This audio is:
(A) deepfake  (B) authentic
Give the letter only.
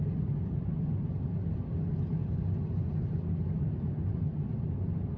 B